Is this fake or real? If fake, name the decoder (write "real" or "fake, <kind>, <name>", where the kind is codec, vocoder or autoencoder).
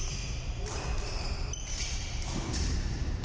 real